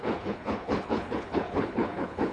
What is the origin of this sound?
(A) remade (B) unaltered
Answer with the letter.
A